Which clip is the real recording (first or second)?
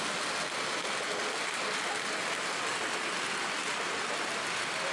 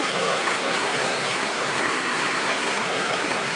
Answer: first